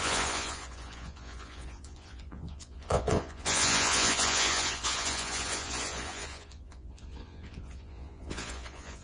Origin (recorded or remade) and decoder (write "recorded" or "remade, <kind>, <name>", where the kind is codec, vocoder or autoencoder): remade, vocoder, Vocos